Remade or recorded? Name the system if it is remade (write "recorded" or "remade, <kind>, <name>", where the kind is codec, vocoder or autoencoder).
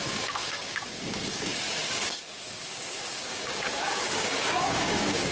remade, codec, DAC